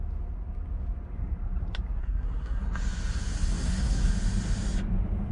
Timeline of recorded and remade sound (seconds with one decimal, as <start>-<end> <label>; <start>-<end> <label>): 0.0-2.0 recorded; 2.0-2.6 remade; 2.6-3.5 recorded; 3.5-4.1 remade; 4.1-5.3 recorded